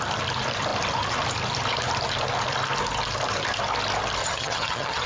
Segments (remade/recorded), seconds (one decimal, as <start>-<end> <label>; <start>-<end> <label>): 0.0-4.2 recorded; 4.2-5.1 remade